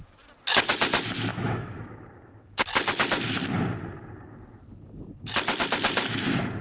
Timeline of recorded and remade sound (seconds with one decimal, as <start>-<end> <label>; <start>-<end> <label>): 0.0-1.3 recorded; 1.3-1.9 remade; 1.9-6.6 recorded